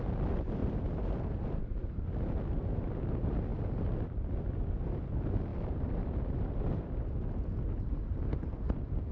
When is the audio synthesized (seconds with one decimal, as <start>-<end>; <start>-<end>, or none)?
0.6-1.6